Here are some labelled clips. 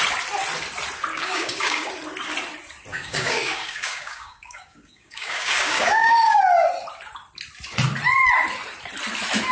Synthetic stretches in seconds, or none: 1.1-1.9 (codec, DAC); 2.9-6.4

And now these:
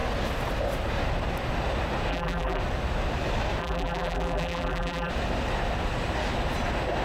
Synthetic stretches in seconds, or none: 2.1-2.6 (vocoder, BigVGAN v2); 3.6-5.1

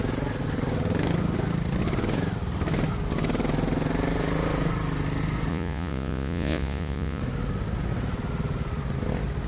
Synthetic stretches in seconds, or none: 5.5-7.2 (vocoder, Vocos)

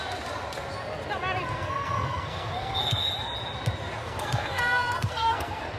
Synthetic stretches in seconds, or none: 1.5-3.1 (codec, SNAC); 4.0-5.8